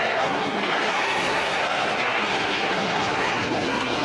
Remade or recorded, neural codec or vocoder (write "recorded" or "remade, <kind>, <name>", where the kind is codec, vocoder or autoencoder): remade, codec, SNAC